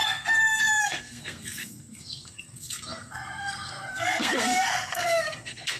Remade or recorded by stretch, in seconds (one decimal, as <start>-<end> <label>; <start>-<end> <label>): 0.0-5.8 remade